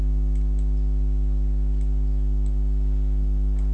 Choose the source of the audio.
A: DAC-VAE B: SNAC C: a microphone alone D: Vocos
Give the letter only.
C